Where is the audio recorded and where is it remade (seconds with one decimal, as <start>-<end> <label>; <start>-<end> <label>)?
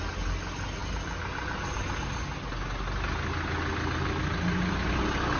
0.0-5.4 recorded